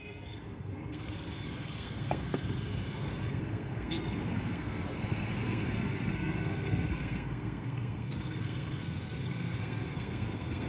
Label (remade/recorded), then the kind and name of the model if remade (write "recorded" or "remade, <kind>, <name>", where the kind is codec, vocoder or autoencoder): remade, codec, SNAC